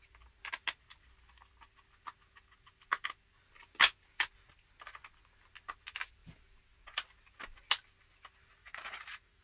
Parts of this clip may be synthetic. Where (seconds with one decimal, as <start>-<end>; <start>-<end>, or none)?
8.6-9.4